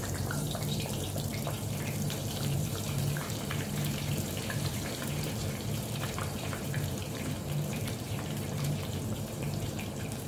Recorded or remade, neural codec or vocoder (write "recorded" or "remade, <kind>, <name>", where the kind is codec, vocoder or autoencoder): remade, vocoder, BigVGAN v2